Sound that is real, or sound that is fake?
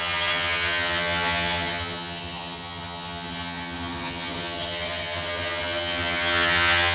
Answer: fake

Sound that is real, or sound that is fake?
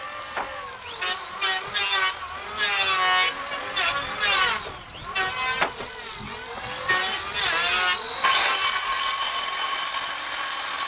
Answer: real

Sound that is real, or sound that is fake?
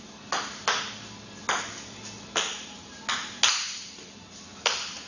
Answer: real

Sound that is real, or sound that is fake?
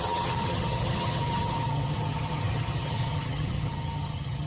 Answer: fake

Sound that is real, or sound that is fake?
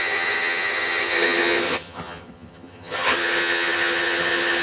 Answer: fake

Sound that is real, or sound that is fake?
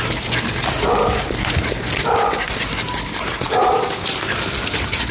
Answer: real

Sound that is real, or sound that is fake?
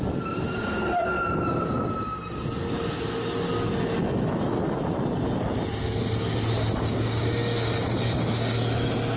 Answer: real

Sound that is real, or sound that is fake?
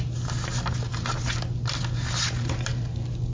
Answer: real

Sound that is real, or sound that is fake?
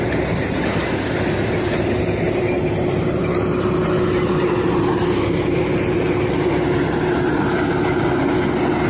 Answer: real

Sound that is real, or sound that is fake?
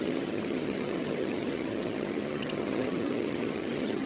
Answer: fake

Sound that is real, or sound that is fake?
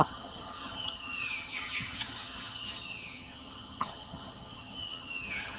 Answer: fake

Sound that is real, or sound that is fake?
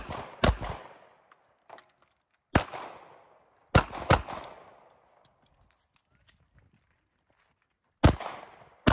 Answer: real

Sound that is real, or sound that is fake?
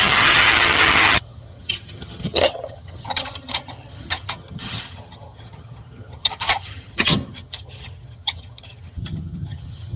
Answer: fake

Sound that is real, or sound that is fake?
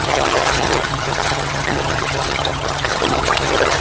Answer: fake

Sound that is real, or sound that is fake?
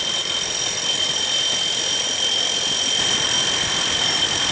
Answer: real